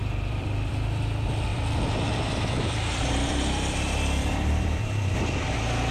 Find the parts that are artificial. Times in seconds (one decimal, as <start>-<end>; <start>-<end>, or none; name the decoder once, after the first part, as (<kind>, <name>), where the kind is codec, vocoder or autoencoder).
0.0-0.7 (vocoder, BigVGAN v2); 1.5-5.0